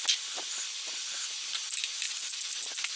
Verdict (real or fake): real